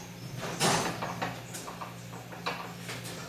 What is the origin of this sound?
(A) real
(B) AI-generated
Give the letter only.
A